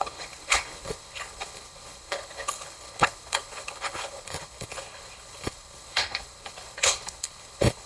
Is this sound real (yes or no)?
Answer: no